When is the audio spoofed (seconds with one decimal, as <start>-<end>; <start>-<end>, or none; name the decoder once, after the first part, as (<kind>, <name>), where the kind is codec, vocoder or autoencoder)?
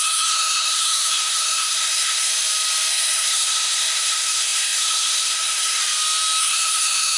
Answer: 0.0-2.3 (codec, SNAC); 2.9-5.8; 6.4-7.2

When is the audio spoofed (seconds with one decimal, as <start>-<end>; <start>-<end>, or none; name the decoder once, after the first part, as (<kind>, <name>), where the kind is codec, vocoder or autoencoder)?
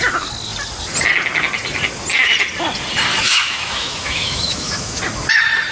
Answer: 3.1-5.0 (autoencoder, DAC-VAE)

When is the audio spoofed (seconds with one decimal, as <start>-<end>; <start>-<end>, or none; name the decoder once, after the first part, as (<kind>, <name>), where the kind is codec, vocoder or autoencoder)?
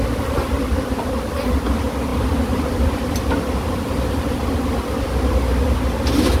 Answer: 2.1-3.2 (vocoder, BigVGAN v2)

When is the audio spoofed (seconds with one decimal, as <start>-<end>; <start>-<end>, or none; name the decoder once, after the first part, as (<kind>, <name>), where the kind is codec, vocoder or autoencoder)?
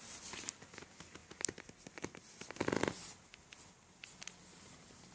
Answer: none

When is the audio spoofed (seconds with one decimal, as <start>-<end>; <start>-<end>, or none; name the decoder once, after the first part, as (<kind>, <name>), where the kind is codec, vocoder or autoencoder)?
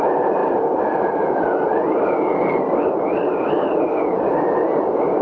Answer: none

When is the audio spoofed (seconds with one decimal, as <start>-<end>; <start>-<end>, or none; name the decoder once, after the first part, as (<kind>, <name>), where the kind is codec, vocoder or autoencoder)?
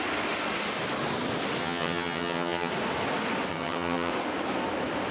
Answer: 1.6-2.7 (vocoder, HiFi-GAN); 3.5-4.1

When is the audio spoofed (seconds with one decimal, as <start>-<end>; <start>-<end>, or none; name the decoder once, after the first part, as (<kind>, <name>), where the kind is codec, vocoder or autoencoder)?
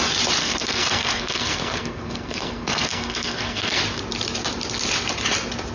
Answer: 0.4-3.8 (codec, SNAC)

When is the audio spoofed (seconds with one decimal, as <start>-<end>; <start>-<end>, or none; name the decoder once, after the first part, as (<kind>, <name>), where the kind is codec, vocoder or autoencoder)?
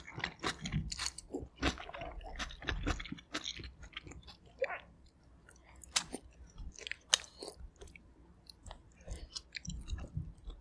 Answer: none